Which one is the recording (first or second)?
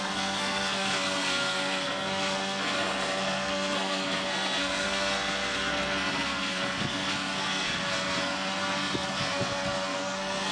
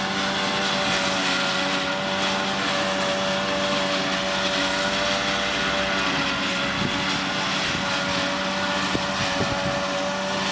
second